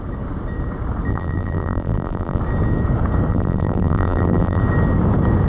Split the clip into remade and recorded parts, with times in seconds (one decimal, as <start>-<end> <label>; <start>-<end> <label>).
0.0-1.1 recorded; 1.1-2.4 remade; 2.4-3.3 recorded; 3.3-4.6 remade; 4.6-5.5 recorded